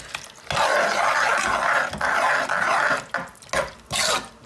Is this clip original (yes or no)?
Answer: yes